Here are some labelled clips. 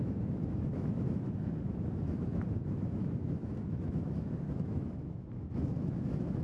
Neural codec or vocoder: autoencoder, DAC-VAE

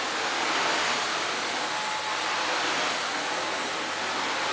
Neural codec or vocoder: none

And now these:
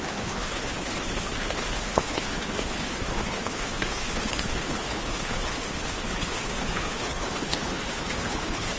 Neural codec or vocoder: codec, HILCodec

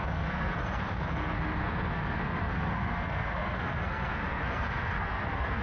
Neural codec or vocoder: codec, SNAC